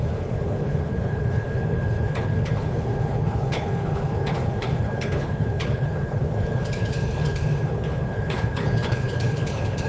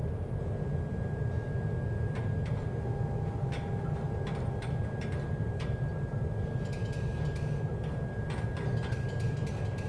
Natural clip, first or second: second